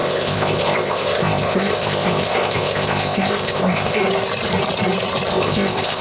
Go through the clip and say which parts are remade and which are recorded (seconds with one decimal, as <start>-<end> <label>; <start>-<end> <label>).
0.0-4.0 remade; 4.0-5.3 recorded; 5.3-6.0 remade